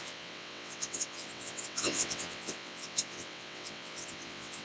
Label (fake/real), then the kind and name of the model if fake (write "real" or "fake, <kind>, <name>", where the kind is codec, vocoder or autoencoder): fake, vocoder, WaveNeXt